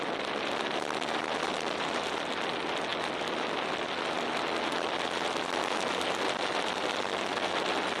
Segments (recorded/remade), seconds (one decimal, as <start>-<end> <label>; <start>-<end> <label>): 0.0-8.0 recorded